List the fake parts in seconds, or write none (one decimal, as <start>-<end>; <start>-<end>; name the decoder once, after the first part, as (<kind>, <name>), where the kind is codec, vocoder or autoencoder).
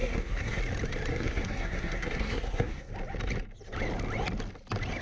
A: 0.0-0.6 (codec, SNAC); 1.1-2.9